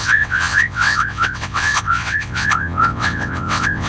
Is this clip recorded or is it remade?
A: remade